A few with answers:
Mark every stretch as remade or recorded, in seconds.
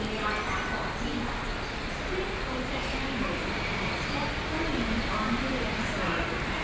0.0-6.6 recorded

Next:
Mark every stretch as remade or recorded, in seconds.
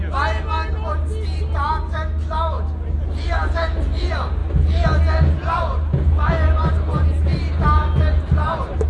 0.0-8.9 recorded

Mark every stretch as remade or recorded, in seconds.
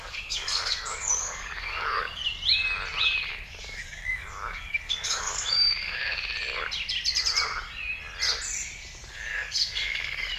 0.0-2.2 remade; 2.2-3.0 recorded; 3.0-6.0 remade; 6.0-9.1 recorded; 9.1-10.4 remade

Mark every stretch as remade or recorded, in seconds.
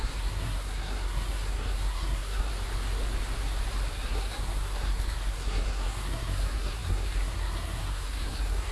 0.0-2.5 remade; 2.5-3.9 recorded; 3.9-8.7 remade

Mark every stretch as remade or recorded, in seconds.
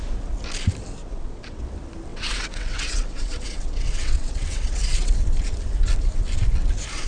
0.0-1.0 recorded; 1.0-1.6 remade; 1.6-2.1 recorded; 2.1-5.1 remade; 5.1-7.1 recorded